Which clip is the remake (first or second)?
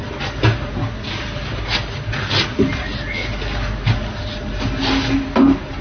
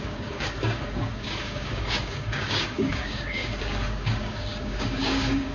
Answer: second